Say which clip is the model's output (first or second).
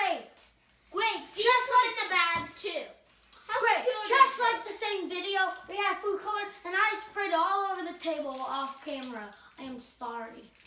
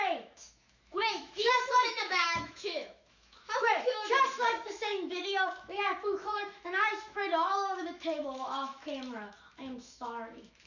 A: second